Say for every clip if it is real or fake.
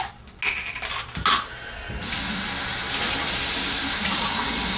real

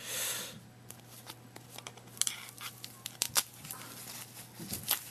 real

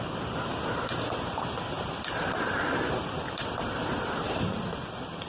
fake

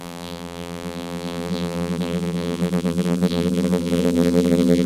fake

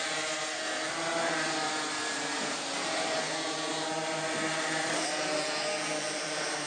fake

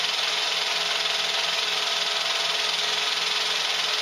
real